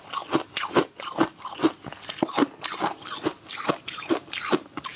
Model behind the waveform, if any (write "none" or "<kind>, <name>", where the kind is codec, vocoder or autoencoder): none